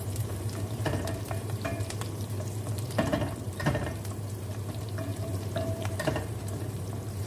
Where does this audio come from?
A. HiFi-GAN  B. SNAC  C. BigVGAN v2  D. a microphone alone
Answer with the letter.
C